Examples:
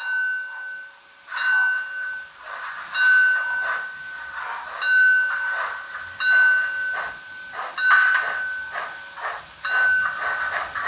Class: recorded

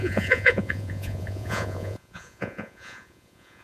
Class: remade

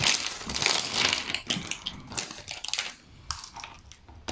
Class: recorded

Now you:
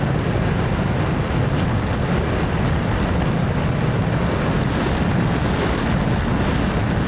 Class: recorded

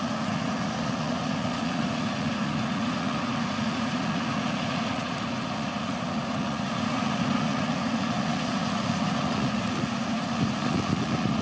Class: remade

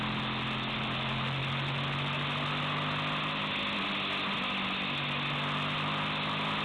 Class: recorded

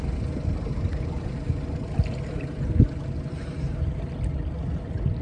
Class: recorded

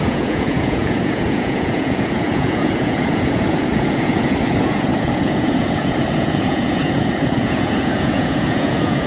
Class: remade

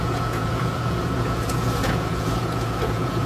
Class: remade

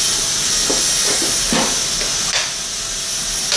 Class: recorded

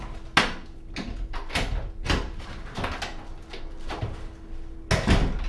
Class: recorded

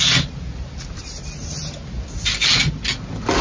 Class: recorded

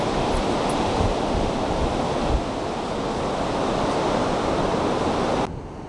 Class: recorded